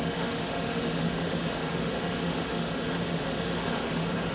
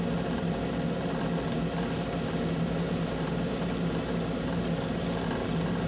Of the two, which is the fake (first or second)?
first